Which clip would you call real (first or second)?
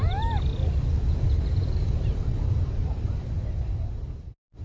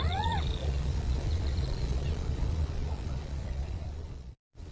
first